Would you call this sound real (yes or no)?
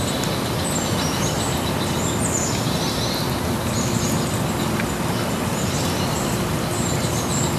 yes